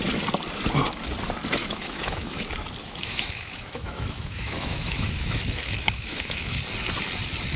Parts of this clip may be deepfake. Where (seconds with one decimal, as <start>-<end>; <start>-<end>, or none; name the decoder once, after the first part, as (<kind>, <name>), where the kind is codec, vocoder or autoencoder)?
1.6-2.4 (autoencoder, DAC-VAE); 2.8-6.6